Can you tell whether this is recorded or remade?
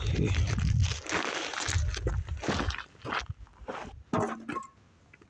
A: recorded